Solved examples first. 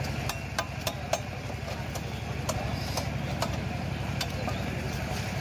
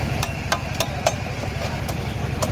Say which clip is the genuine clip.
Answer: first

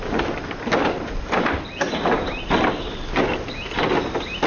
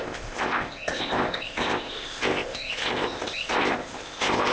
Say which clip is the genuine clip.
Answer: first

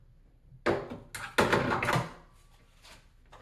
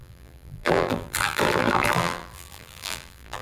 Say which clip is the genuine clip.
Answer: first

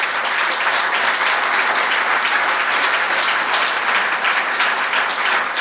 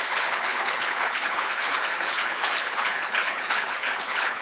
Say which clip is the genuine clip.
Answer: first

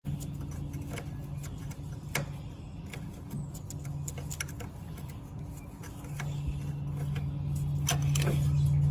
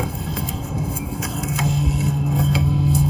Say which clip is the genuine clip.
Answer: first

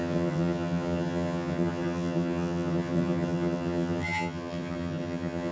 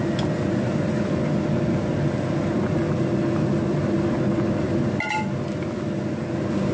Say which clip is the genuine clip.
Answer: second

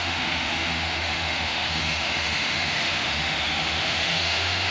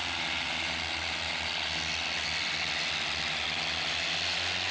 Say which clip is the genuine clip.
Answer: second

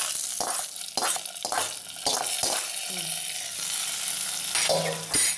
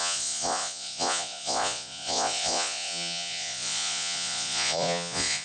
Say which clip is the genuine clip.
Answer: first